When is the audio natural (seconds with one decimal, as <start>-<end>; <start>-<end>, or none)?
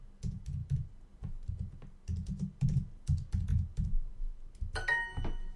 0.0-5.6